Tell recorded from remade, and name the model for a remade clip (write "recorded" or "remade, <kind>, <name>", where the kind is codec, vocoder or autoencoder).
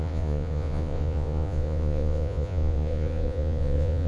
remade, vocoder, Vocos